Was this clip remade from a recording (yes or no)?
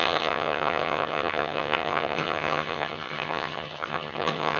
yes